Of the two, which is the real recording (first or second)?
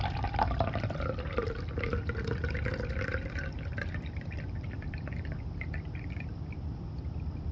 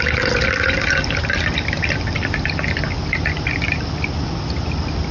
second